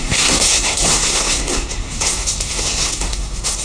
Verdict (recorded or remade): remade